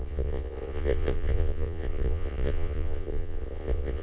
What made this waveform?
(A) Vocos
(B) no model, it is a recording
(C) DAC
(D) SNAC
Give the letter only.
A